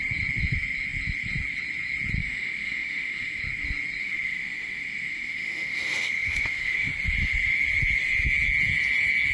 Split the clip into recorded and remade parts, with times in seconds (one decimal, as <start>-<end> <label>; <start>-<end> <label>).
0.0-2.2 recorded; 2.2-3.4 remade; 3.4-4.0 recorded; 4.0-6.9 remade; 6.9-9.3 recorded